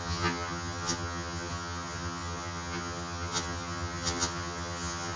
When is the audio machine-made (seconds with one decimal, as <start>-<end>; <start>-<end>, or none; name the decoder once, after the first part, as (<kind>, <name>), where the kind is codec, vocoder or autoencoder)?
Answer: 0.0-5.2 (vocoder, HiFi-GAN)